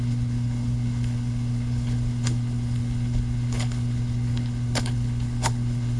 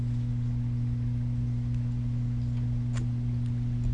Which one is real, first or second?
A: second